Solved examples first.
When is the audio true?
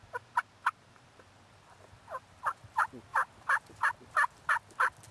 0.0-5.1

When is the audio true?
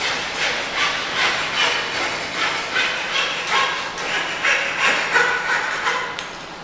0.0-6.6